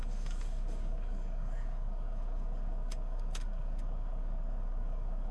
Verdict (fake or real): fake